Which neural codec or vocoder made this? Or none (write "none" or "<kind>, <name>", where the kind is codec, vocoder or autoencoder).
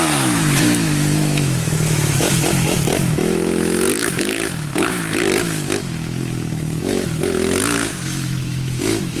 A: autoencoder, DAC-VAE